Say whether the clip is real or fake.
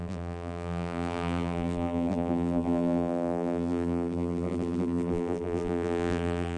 fake